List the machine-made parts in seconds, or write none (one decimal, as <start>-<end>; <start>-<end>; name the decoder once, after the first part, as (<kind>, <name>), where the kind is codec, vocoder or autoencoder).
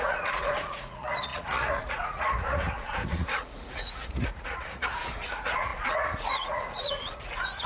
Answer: 0.0-7.7 (vocoder, Vocos)